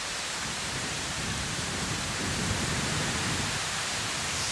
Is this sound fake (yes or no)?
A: yes